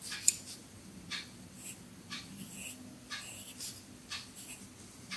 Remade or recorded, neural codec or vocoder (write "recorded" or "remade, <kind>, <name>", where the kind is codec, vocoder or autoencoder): recorded